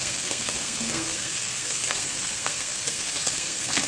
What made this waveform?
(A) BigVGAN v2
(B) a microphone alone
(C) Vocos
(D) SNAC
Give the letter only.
D